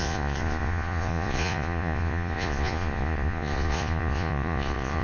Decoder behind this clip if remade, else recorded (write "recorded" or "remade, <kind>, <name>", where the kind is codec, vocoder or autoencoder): remade, vocoder, Vocos